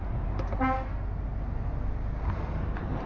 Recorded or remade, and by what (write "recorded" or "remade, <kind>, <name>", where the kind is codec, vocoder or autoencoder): recorded